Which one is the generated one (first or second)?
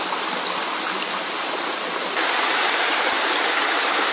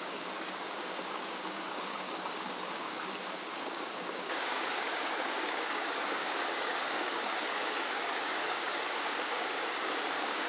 second